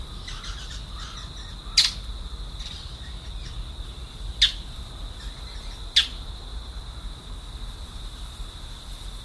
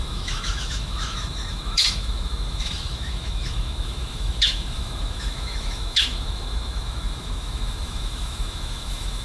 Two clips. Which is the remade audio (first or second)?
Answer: second